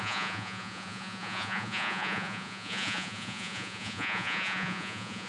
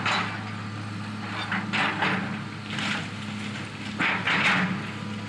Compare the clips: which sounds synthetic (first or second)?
first